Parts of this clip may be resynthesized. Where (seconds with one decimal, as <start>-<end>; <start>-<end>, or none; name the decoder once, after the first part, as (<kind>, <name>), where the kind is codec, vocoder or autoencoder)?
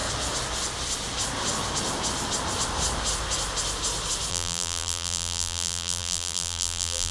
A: 4.3-7.1 (vocoder, BigVGAN v2)